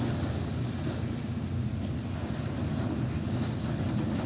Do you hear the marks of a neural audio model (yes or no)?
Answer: no